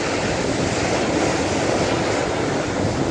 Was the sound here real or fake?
real